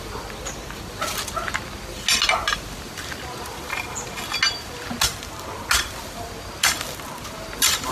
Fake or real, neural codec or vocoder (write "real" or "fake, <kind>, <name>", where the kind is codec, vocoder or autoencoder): real